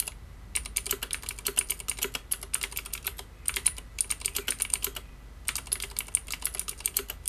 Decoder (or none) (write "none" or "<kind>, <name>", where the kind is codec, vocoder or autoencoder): none